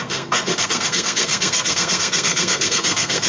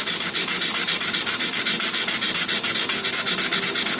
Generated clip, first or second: first